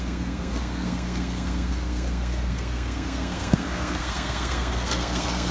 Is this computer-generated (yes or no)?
yes